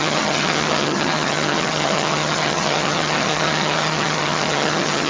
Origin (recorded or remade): remade